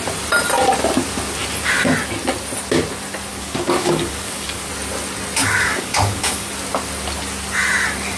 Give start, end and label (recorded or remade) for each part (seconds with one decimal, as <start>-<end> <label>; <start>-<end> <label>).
0.0-3.3 recorded; 3.3-4.7 remade; 4.7-5.4 recorded; 5.4-6.5 remade; 6.5-8.2 recorded